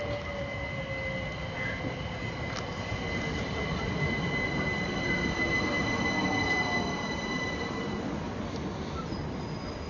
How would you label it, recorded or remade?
recorded